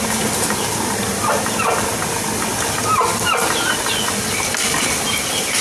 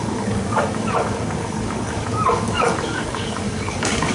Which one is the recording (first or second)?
first